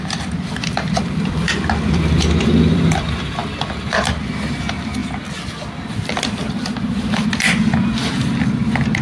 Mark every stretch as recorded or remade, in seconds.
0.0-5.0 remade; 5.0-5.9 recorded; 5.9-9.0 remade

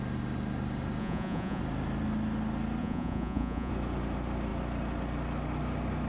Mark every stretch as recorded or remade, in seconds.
0.0-1.0 recorded; 1.0-1.6 remade; 1.6-2.8 recorded; 2.8-3.7 remade; 3.7-6.1 recorded

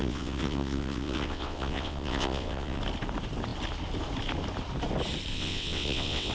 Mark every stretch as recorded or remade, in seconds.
0.0-2.8 remade; 2.8-5.3 recorded; 5.3-6.3 remade

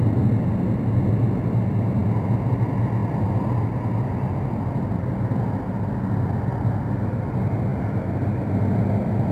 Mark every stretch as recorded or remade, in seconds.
0.0-9.3 recorded

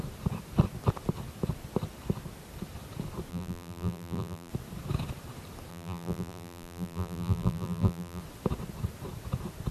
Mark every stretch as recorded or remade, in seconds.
0.0-3.3 recorded; 3.3-4.5 remade; 4.5-5.7 recorded; 5.7-8.2 remade; 8.2-9.7 recorded

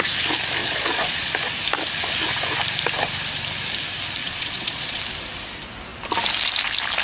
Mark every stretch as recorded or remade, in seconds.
0.0-0.6 recorded; 0.6-1.3 remade; 1.3-4.2 recorded; 4.2-5.0 remade; 5.0-7.0 recorded